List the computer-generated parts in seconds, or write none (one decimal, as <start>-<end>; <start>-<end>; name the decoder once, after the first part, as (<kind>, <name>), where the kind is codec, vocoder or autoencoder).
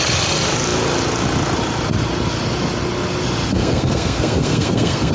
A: 3.5-5.1 (codec, SNAC)